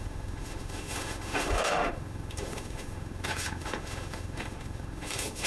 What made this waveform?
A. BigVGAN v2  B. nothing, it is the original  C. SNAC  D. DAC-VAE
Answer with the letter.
D